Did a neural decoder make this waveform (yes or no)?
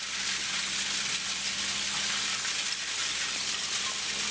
no